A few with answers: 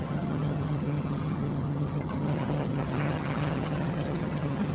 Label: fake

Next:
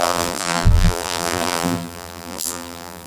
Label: fake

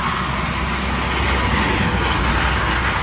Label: real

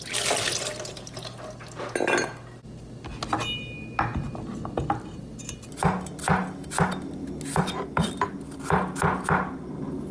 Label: real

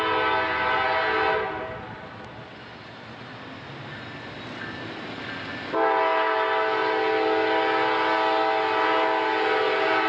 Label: real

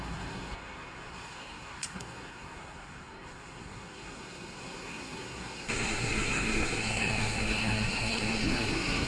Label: fake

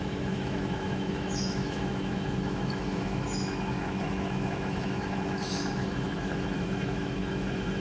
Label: fake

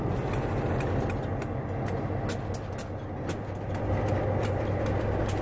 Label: real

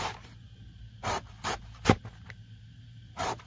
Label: real